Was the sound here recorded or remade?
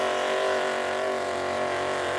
recorded